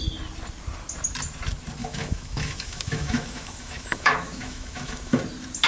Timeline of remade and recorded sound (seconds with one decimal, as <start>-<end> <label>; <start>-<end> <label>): 0.0-1.8 recorded; 1.8-5.2 remade; 5.2-5.7 recorded